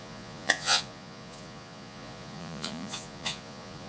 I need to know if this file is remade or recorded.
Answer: remade